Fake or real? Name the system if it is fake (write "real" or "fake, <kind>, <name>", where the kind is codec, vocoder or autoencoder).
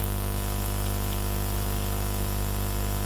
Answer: real